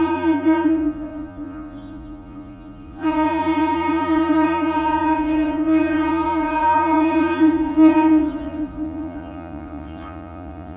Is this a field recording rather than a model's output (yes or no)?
no